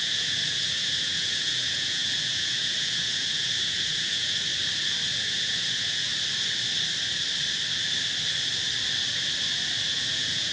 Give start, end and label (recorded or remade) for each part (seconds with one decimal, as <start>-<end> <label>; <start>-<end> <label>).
0.0-4.5 remade; 4.5-5.2 recorded; 5.2-6.1 remade; 6.1-9.9 recorded; 9.9-10.5 remade